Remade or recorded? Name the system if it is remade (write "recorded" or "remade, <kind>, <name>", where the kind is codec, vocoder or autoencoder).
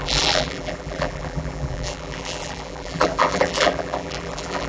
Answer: remade, vocoder, BigVGAN v2